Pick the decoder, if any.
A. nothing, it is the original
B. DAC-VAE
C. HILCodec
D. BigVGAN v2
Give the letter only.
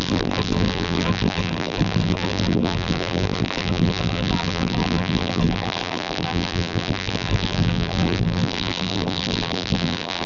D